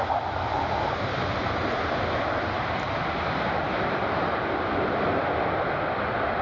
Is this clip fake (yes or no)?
no